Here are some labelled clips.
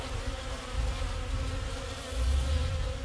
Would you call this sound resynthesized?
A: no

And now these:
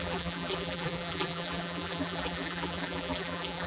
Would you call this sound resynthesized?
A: yes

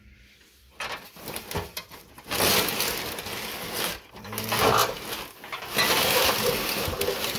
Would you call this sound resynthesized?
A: no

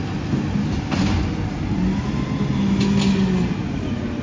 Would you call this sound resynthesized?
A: no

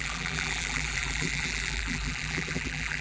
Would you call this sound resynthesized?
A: yes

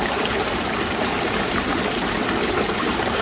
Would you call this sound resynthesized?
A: yes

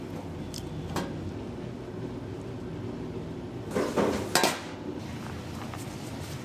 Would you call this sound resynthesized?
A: no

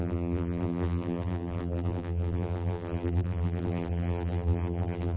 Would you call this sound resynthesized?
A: yes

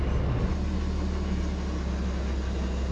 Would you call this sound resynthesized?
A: no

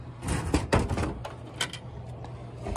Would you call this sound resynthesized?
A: no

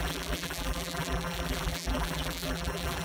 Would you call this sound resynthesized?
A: yes